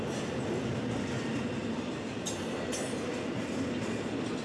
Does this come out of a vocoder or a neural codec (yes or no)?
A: no